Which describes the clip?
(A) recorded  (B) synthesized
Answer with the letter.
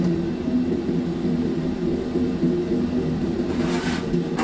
A